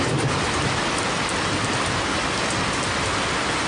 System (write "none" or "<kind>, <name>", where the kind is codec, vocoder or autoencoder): none